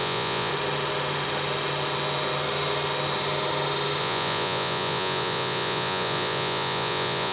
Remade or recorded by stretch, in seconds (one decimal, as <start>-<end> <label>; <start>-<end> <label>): 0.0-0.5 remade; 0.5-4.0 recorded; 4.0-7.3 remade